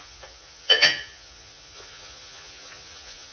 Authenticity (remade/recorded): remade